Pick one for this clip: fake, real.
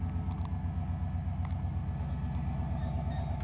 real